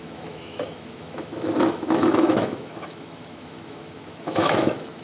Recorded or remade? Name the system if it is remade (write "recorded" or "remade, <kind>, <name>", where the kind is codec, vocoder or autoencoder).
remade, autoencoder, DAC-VAE